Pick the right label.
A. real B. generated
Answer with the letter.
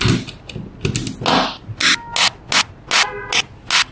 A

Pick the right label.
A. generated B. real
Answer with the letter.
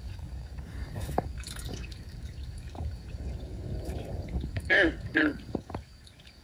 A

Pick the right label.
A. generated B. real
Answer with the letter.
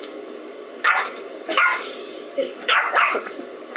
A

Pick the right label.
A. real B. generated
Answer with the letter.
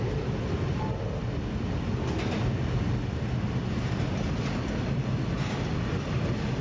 A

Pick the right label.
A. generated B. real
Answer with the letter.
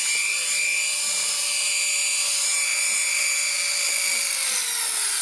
B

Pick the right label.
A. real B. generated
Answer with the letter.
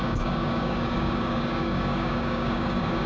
B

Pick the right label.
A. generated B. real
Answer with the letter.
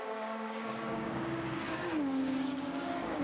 A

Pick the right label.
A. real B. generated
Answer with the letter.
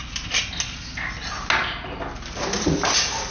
A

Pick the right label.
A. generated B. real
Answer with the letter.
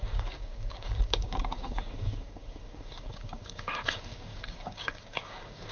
A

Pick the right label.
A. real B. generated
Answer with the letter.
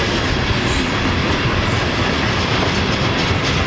A